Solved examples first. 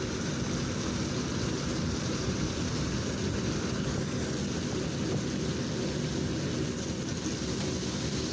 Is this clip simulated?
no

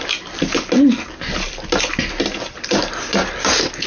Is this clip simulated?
no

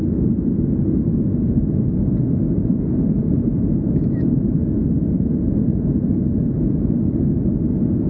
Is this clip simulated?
no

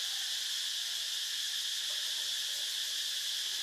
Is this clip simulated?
no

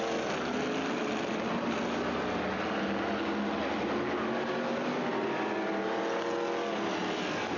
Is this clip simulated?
no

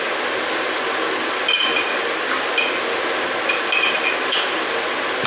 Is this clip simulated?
no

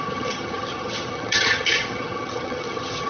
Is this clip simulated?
yes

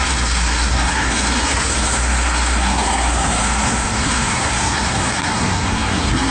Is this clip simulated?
yes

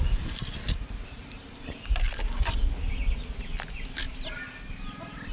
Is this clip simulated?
no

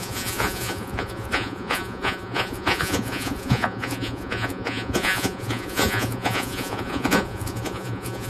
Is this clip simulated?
yes